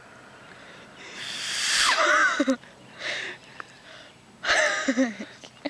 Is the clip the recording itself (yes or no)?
no